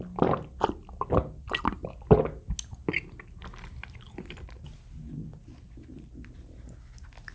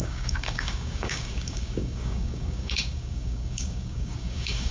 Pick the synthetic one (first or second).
second